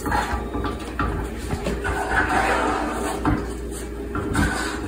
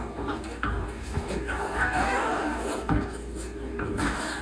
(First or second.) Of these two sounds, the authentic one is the first